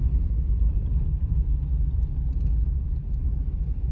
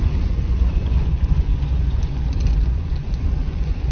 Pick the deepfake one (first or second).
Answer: second